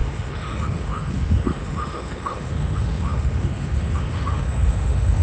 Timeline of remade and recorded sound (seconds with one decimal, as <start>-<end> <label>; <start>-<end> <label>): 0.0-5.2 remade